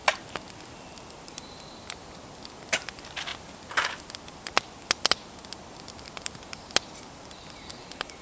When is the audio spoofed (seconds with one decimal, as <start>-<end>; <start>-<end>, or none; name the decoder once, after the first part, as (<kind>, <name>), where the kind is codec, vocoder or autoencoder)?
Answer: none